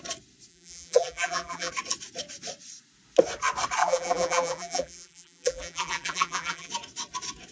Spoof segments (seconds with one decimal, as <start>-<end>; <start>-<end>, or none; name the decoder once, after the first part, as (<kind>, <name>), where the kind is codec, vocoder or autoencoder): 0.5-1.7 (vocoder, BigVGAN v2); 3.8-6.7